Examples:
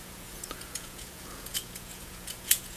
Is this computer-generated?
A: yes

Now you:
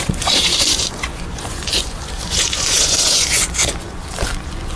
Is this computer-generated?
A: yes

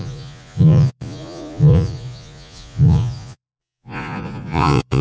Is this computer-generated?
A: yes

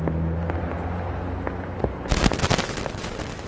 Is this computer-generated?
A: no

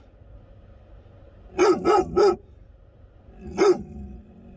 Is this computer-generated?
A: no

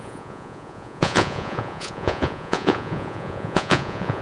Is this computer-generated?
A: yes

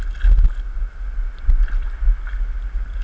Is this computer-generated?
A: no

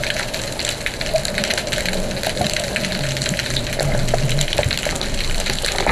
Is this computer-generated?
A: no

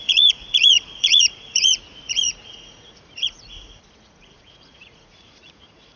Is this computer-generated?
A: yes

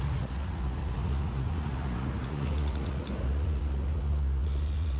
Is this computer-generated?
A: yes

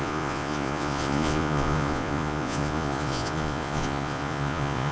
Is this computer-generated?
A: yes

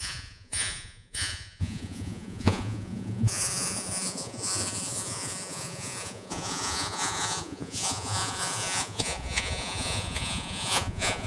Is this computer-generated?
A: yes